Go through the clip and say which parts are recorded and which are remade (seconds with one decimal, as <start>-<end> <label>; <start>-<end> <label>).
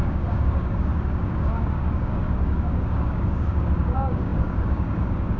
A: 0.0-5.4 remade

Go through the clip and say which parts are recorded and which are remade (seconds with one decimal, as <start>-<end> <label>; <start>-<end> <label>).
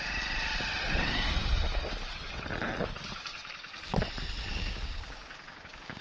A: 0.0-4.5 recorded; 4.5-6.0 remade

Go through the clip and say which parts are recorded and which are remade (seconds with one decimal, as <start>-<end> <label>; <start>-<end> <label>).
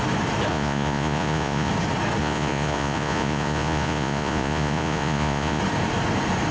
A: 0.0-0.5 recorded; 0.5-1.7 remade; 1.7-2.2 recorded; 2.2-5.6 remade; 5.6-6.5 recorded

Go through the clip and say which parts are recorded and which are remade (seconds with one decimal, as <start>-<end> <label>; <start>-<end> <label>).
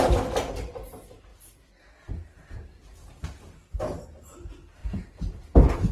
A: 0.0-5.9 recorded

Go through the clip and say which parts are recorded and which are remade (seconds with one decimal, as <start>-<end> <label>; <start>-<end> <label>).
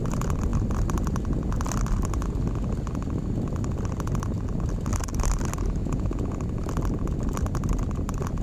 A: 0.0-5.8 recorded; 5.8-6.4 remade; 6.4-8.4 recorded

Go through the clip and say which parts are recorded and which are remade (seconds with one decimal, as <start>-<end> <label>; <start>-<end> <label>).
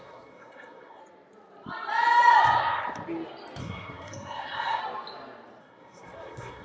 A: 0.0-1.0 remade; 1.0-3.6 recorded; 3.6-4.8 remade; 4.8-5.6 recorded; 5.6-6.6 remade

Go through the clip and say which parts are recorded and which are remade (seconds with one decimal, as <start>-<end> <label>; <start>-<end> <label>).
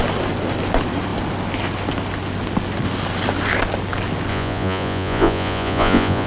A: 0.0-4.3 recorded; 4.3-6.3 remade